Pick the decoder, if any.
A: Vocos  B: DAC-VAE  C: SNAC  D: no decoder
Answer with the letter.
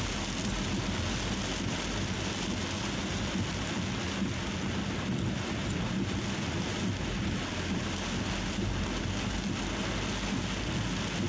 D